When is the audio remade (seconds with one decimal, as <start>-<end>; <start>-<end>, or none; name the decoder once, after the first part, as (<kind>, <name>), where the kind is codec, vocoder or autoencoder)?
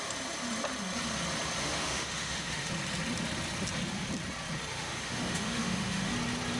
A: 1.6-2.7 (autoencoder, DAC-VAE); 4.7-6.1